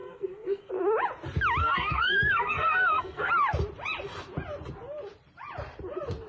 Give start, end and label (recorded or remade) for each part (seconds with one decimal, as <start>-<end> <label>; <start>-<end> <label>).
0.0-0.7 remade; 0.7-1.6 recorded; 1.6-3.3 remade; 3.3-6.3 recorded